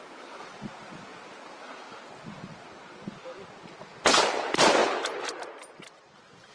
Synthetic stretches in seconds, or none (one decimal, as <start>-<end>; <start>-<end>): none